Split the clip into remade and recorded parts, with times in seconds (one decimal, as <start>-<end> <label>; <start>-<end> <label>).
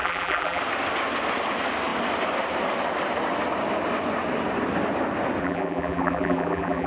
0.0-0.6 remade; 0.6-5.4 recorded; 5.4-6.9 remade